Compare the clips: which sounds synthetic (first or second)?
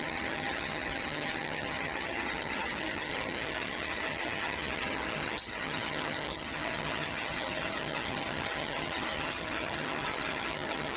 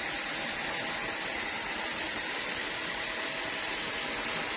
first